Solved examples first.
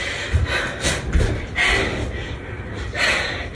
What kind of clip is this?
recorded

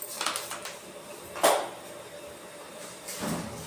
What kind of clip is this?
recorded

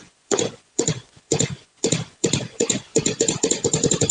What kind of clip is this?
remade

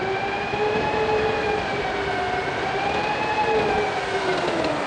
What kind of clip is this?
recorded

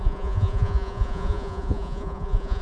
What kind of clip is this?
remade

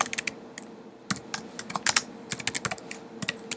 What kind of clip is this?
recorded